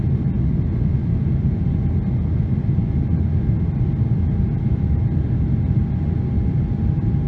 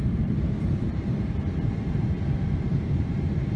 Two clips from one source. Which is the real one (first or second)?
first